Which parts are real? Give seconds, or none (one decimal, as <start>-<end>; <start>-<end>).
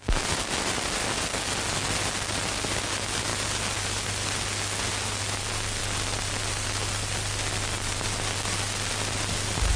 0.0-3.3; 4.6-5.8; 8.9-9.8